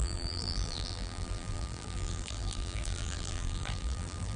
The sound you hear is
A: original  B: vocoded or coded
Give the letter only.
B